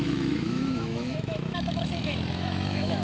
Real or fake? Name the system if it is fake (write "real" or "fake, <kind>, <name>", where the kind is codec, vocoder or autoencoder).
fake, autoencoder, DAC-VAE